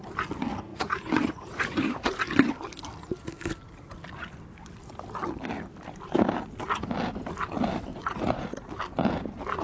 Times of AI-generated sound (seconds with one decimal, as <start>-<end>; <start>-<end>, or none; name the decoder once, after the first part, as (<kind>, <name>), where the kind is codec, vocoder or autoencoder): 0.7-2.2 (vocoder, Vocos); 7.9-8.7